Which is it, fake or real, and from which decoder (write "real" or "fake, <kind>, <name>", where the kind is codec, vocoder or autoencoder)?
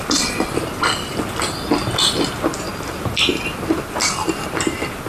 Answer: real